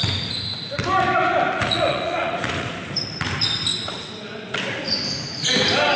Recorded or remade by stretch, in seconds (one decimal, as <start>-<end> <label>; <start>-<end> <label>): 0.0-1.5 recorded; 1.5-2.7 remade; 2.7-6.0 recorded